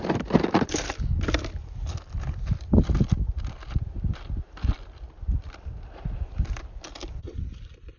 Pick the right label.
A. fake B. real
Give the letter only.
A